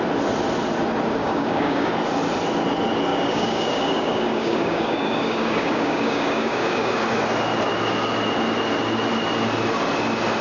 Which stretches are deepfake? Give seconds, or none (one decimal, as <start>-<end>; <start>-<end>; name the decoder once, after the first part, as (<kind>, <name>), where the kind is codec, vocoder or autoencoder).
1.2-1.9 (codec, DAC); 3.1-7.0